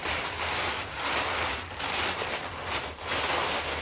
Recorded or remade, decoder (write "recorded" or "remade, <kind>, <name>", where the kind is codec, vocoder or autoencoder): recorded